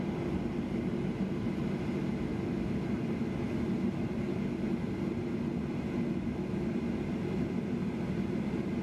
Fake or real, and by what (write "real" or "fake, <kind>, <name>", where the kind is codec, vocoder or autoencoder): real